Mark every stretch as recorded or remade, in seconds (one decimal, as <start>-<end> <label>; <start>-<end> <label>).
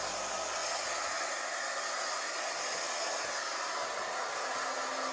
0.0-5.1 recorded